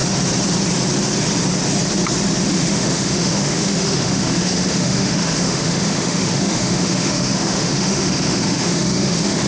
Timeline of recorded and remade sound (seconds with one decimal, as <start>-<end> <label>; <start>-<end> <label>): 0.0-2.5 recorded; 2.5-9.5 remade